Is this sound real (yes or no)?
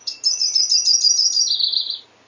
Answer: yes